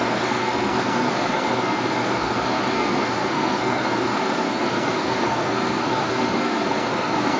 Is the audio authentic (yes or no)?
no